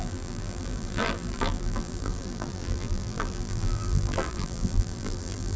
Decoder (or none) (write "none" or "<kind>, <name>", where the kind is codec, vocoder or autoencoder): vocoder, BigVGAN v2